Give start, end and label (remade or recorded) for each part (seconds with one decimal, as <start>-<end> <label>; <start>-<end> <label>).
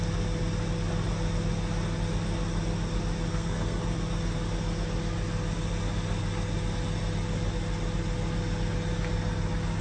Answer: 0.0-3.3 recorded; 3.3-3.8 remade; 3.8-9.8 recorded